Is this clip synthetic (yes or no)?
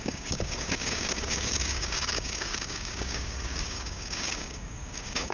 yes